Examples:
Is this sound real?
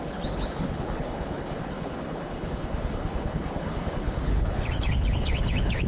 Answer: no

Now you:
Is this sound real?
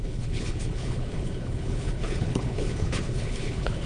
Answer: no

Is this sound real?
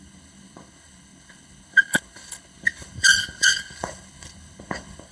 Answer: no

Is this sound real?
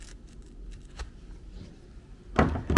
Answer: yes